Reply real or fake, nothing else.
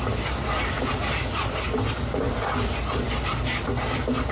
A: fake